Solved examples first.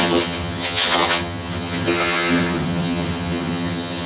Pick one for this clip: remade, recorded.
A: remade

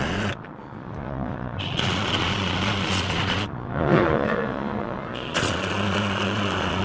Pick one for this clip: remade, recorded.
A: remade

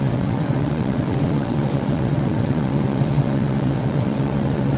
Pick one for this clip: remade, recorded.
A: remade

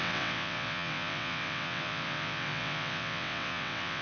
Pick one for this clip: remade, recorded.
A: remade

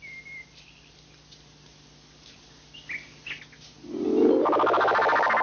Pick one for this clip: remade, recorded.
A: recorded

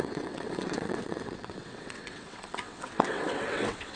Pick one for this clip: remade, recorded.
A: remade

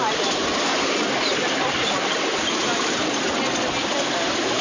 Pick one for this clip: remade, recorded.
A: recorded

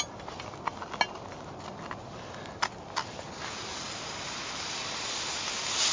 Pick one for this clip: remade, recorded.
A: recorded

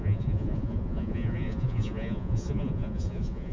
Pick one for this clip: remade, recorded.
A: remade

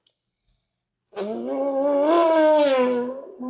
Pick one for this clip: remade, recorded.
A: recorded